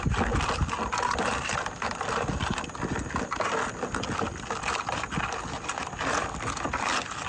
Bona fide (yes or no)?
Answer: yes